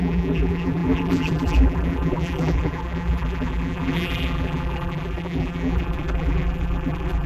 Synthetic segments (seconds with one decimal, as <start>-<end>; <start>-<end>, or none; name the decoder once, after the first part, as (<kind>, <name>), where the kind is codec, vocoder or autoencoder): 0.0-7.3 (vocoder, BigVGAN v2)